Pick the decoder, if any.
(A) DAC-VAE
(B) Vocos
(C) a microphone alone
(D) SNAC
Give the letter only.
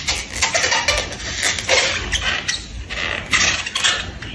C